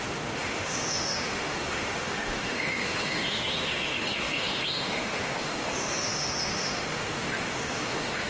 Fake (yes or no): yes